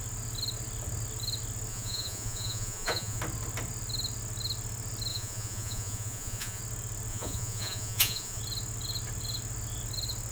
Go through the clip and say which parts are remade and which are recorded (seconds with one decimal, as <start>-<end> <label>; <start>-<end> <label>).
0.0-1.7 recorded; 1.7-3.2 remade; 3.2-5.1 recorded; 5.1-6.6 remade; 6.6-7.1 recorded; 7.1-8.4 remade; 8.4-10.3 recorded